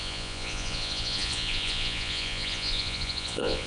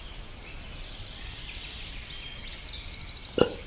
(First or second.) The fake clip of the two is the first